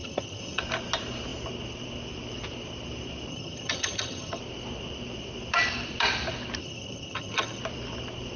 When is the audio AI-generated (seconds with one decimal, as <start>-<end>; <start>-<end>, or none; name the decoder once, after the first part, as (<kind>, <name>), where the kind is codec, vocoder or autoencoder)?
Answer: 0.0-0.6 (vocoder, HiFi-GAN); 3.3-4.4; 6.6-7.6